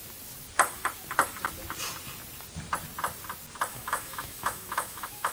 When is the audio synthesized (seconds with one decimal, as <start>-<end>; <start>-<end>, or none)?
3.7-5.3